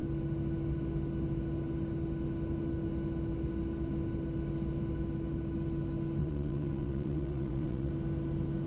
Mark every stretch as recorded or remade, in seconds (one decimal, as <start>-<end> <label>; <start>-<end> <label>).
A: 0.0-6.2 recorded; 6.2-7.9 remade; 7.9-8.7 recorded